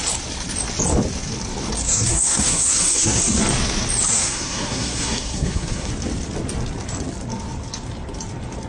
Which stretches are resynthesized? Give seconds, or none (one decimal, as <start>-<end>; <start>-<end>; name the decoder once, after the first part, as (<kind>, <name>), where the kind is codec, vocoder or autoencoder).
1.8-3.2 (codec, SNAC); 4.1-5.9